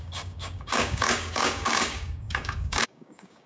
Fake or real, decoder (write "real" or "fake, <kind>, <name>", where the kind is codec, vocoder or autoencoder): fake, codec, DAC